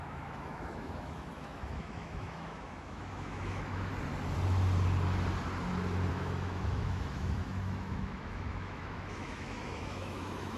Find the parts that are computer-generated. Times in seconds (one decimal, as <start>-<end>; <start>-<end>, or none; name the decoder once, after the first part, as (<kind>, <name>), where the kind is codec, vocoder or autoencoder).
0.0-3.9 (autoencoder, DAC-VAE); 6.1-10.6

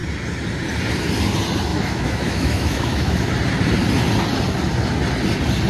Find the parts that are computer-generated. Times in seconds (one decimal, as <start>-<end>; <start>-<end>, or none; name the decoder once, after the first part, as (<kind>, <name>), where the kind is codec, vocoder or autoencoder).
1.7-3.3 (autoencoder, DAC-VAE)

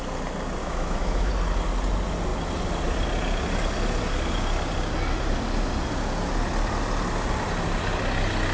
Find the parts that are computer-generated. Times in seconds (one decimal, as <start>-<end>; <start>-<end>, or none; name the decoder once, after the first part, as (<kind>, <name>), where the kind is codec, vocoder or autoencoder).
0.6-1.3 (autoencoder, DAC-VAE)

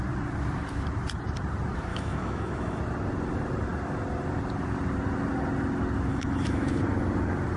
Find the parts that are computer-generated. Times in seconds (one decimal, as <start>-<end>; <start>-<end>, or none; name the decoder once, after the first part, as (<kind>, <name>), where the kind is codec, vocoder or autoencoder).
1.9-2.8 (autoencoder, DAC-VAE); 6.1-6.8

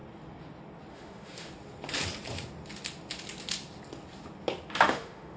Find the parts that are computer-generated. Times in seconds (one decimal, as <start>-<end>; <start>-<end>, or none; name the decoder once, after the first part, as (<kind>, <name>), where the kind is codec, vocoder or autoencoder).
0.9-1.5 (autoencoder, DAC-VAE); 4.7-5.4

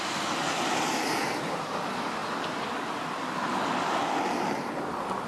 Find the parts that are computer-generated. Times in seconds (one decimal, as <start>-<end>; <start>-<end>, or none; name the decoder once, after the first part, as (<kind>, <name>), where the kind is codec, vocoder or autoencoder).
none

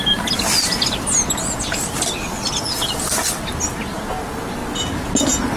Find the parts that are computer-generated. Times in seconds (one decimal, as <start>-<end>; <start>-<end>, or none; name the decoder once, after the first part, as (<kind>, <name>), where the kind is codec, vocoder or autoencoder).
none